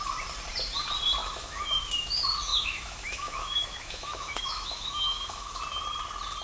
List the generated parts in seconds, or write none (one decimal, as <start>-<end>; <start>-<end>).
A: 1.2-1.8; 2.5-5.6